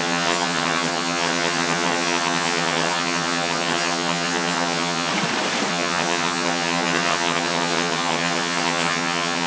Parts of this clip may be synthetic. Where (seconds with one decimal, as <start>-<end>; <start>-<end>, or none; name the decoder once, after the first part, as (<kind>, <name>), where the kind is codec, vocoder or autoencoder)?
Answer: 0.0-5.1 (vocoder, HiFi-GAN); 5.7-9.5